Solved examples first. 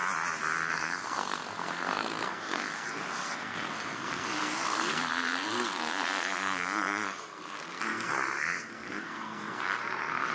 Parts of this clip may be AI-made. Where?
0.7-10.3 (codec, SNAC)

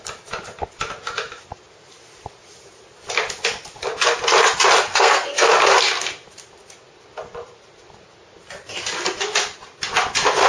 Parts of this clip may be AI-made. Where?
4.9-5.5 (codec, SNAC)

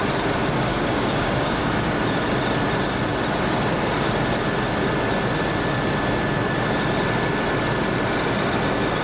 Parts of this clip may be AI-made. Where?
0.7-1.9 (codec, DAC)